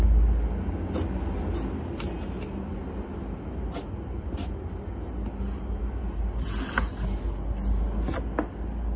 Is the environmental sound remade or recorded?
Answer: recorded